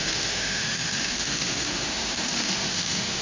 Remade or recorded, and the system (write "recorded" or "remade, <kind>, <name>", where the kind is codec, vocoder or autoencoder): remade, autoencoder, DAC-VAE